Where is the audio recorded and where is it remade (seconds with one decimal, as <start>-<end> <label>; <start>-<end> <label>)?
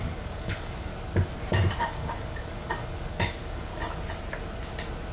0.0-0.9 remade; 0.9-1.8 recorded; 1.8-3.7 remade; 3.7-5.1 recorded